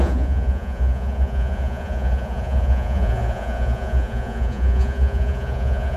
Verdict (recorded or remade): remade